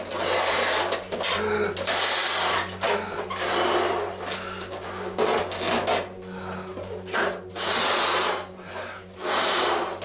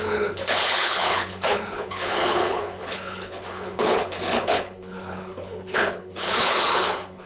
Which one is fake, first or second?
second